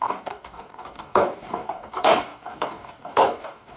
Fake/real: fake